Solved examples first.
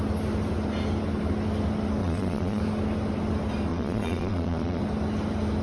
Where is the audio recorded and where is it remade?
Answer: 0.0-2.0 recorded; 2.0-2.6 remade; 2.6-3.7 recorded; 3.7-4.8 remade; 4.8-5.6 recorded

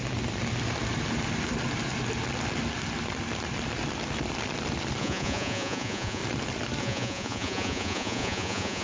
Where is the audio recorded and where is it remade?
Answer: 0.0-5.0 recorded; 5.0-6.2 remade; 6.2-6.8 recorded; 6.8-8.8 remade

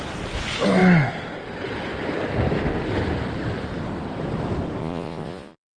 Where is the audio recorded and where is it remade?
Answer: 0.0-4.8 recorded; 4.8-5.8 remade

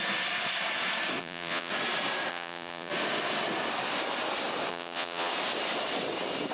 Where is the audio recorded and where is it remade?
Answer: 0.0-1.2 recorded; 1.2-1.7 remade; 1.7-2.3 recorded; 2.3-2.9 remade; 2.9-4.7 recorded; 4.7-5.3 remade; 5.3-6.5 recorded

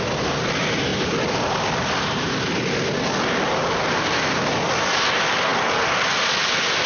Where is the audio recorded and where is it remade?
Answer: 0.0-6.9 recorded